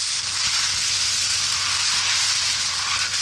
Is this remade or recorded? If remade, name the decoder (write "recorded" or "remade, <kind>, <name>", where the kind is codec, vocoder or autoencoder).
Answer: recorded